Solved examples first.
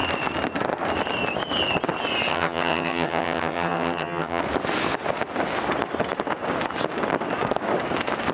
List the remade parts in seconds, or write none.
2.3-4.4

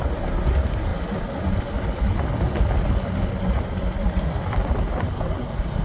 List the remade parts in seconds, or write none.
none

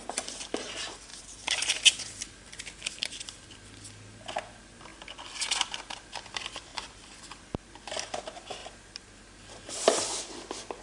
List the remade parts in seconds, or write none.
1.1-2.0; 6.7-7.2

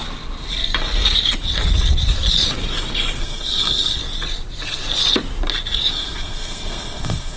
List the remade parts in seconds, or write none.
3.2-4.0; 5.9-7.4

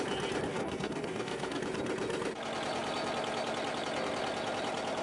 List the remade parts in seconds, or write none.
0.5-1.6

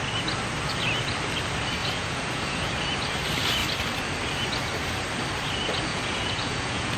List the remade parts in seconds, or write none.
1.8-2.7; 5.9-7.0

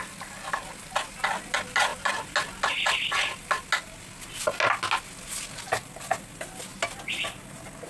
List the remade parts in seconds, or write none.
none

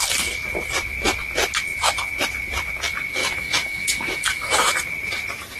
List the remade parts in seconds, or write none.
3.2-4.7